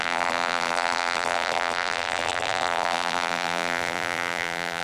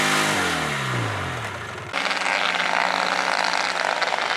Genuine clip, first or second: second